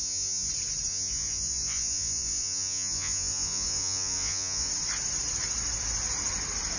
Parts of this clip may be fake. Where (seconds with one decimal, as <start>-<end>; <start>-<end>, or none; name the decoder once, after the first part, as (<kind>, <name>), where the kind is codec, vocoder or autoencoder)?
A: 0.0-0.5 (vocoder, Vocos); 0.9-4.7